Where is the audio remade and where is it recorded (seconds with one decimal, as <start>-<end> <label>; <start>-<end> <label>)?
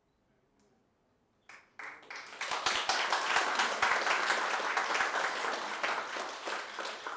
0.0-7.2 recorded